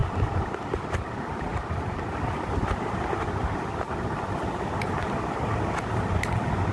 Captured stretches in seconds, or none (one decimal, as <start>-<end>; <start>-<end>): 1.5-5.5